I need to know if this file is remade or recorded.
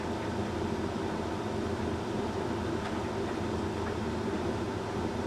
recorded